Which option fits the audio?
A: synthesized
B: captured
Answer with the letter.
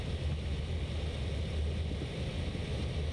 B